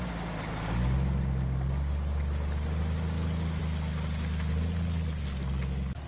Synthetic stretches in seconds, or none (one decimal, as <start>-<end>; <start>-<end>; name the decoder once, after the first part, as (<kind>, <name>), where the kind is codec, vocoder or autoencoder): none